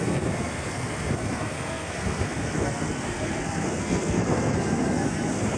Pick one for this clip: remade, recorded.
remade